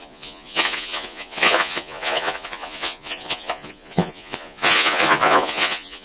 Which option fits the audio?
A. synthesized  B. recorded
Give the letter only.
A